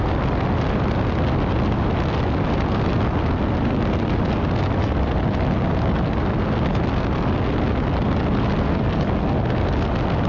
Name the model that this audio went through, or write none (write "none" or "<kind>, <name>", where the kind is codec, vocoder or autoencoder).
none